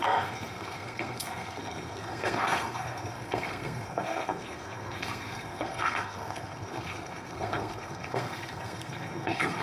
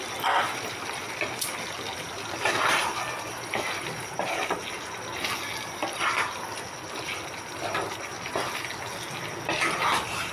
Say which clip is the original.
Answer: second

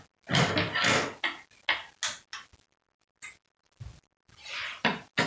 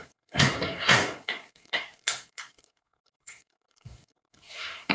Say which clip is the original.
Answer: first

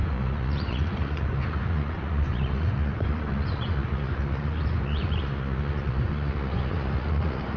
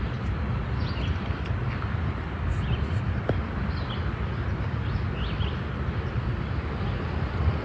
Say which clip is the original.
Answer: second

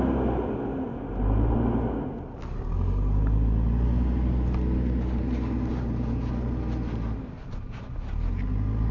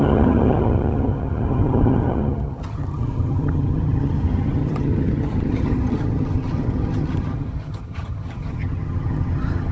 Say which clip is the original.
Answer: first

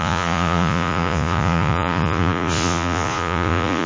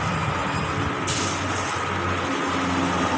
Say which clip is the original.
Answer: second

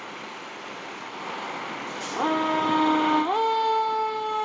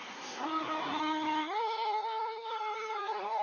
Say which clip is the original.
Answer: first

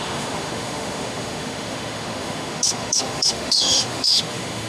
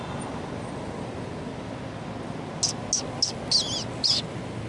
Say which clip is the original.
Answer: second